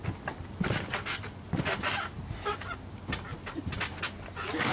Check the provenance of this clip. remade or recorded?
recorded